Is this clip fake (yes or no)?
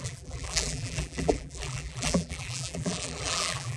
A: yes